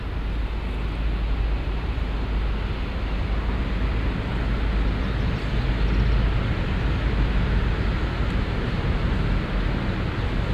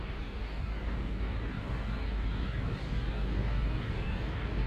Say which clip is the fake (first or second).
second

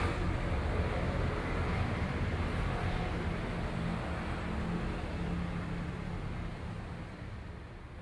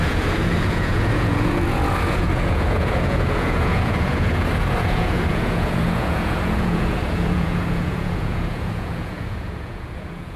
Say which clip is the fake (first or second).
second